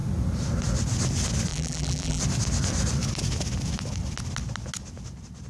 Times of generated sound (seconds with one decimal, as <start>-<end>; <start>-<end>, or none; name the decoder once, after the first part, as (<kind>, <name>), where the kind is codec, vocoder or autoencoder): 1.5-2.2 (vocoder, BigVGAN v2)